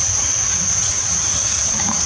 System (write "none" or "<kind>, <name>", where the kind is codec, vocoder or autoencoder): vocoder, Vocos